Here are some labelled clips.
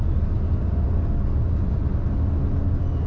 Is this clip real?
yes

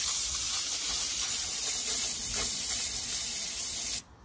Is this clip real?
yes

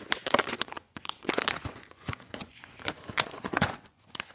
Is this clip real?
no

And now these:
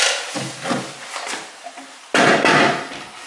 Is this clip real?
yes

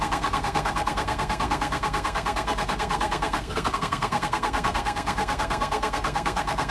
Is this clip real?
no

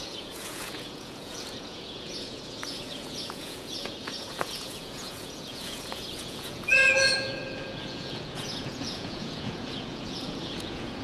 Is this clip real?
no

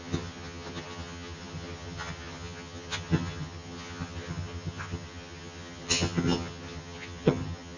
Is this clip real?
no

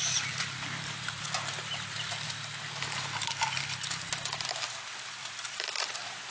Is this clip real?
no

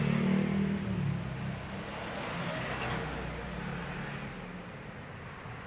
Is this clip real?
yes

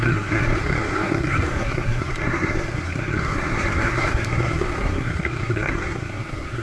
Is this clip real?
no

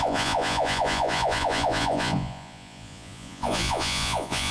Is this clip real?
no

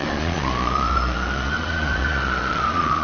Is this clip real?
no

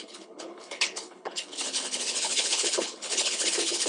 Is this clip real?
no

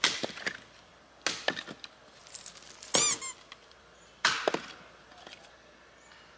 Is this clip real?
yes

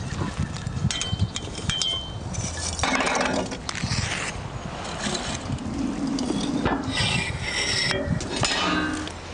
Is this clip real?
yes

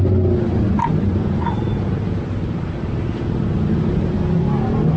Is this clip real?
yes